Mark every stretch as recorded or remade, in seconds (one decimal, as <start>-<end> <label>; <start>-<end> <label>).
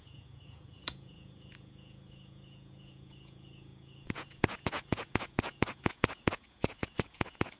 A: 0.0-7.6 remade